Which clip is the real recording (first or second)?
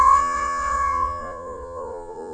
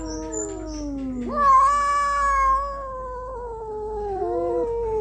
second